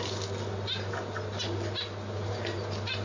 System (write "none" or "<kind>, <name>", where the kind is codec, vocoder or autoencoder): none